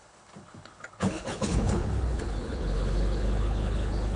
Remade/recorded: remade